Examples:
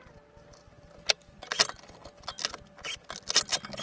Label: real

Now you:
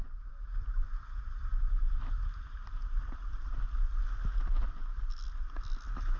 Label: real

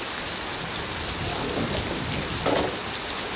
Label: real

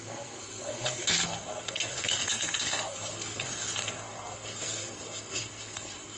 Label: fake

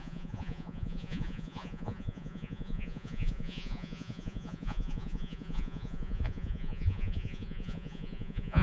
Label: fake